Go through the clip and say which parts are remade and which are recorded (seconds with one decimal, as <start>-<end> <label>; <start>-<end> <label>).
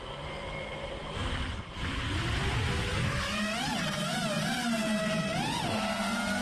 0.0-6.4 recorded